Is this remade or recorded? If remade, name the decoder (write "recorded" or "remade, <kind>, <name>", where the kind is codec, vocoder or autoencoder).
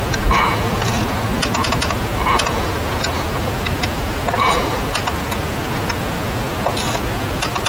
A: recorded